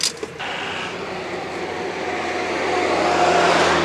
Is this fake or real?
real